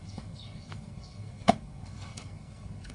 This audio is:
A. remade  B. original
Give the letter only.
A